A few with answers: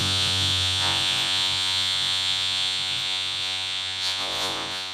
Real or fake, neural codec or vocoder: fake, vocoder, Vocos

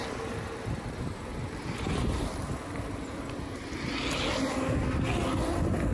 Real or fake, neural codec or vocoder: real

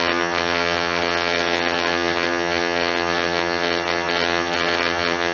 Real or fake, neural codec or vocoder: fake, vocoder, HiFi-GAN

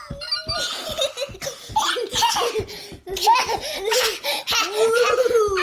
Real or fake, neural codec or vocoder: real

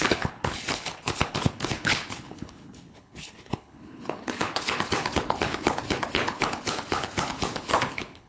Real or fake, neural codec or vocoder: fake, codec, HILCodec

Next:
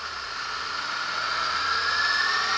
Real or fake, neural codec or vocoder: fake, vocoder, Vocos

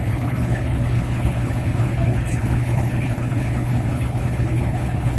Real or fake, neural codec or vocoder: fake, codec, HILCodec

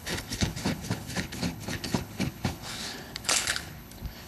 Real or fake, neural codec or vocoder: fake, codec, HILCodec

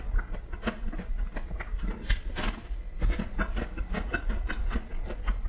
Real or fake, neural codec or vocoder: real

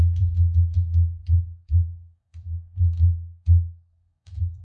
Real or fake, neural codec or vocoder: fake, codec, DAC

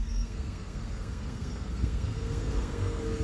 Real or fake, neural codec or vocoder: fake, codec, SNAC